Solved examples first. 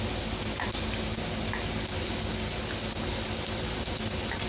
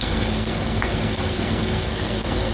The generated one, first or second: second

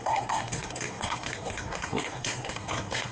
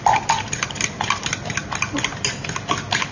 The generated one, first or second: first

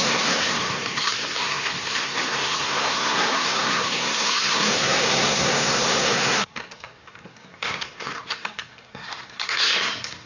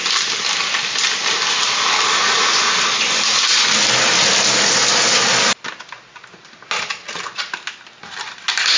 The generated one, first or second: first